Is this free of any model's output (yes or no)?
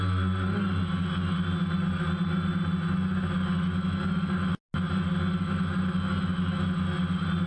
yes